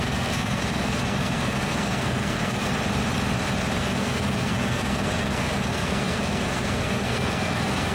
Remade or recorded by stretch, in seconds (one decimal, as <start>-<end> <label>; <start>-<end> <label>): 0.0-2.7 remade; 2.7-3.8 recorded; 3.8-7.9 remade